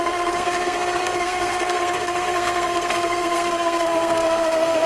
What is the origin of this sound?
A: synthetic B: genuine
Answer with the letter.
A